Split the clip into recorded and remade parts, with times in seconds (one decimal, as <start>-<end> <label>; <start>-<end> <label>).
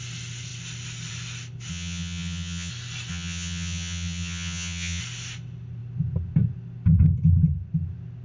0.0-1.7 recorded; 1.7-2.7 remade; 2.7-3.1 recorded; 3.1-5.0 remade; 5.0-8.2 recorded